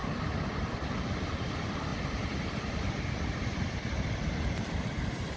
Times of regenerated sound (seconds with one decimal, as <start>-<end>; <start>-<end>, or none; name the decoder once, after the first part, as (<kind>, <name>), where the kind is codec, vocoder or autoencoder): none